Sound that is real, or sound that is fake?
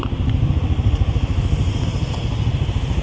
real